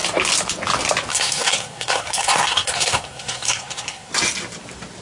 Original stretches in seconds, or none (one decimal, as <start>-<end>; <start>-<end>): 0.0-1.1; 4.1-5.0